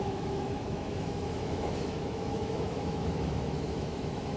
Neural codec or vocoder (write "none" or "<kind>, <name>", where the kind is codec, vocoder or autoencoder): autoencoder, DAC-VAE